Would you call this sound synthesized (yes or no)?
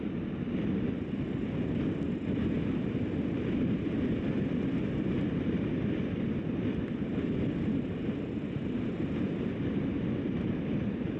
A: no